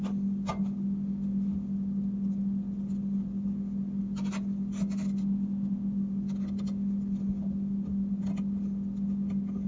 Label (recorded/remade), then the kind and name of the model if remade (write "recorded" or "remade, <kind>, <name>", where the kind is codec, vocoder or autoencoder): recorded